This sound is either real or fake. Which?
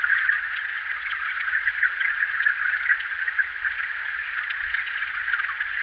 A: fake